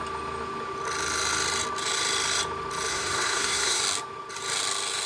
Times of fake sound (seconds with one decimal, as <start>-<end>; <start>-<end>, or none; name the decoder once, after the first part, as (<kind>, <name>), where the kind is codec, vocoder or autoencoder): 2.9-3.8 (codec, SNAC)